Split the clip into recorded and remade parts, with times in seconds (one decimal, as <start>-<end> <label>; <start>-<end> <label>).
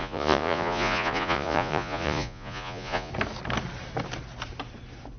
0.0-3.1 remade; 3.1-5.2 recorded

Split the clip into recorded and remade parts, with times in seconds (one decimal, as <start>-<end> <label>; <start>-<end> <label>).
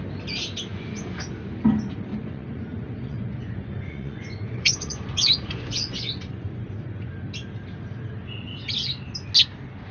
0.0-0.7 recorded; 0.7-1.3 remade; 1.3-2.1 recorded; 2.1-7.1 remade; 7.1-9.9 recorded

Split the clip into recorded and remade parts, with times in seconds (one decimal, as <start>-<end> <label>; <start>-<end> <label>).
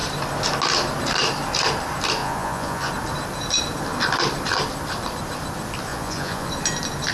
0.0-2.2 recorded; 2.2-2.9 remade; 2.9-5.9 recorded; 5.9-6.5 remade; 6.5-7.1 recorded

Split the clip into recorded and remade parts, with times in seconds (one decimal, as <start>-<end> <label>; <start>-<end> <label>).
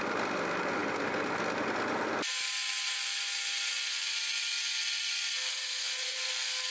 0.0-5.5 recorded; 5.5-6.3 remade; 6.3-6.7 recorded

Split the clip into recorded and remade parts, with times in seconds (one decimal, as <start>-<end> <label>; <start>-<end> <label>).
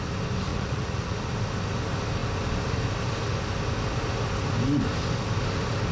0.0-0.5 recorded; 0.5-1.2 remade; 1.2-5.9 recorded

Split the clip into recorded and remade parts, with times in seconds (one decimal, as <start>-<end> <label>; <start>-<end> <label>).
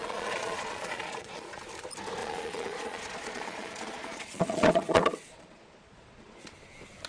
0.0-1.6 remade; 1.6-2.2 recorded; 2.2-6.5 remade; 6.5-7.1 recorded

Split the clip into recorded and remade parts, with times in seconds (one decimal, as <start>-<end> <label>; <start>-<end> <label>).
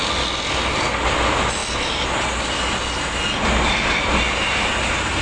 0.0-5.2 recorded